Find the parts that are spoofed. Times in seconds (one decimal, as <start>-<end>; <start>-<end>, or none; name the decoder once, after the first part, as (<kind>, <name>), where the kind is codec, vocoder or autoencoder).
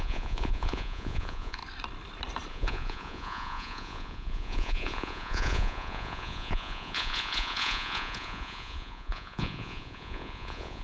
0.0-1.6 (vocoder, Vocos); 2.5-10.8